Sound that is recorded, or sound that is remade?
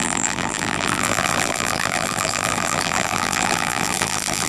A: remade